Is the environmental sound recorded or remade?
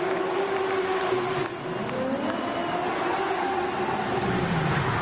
recorded